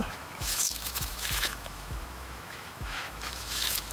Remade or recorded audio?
remade